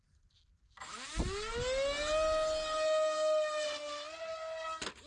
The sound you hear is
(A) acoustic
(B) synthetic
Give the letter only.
A